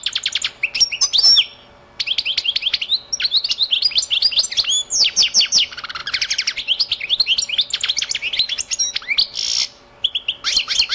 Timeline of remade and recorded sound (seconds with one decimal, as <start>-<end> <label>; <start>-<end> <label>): 0.0-10.9 recorded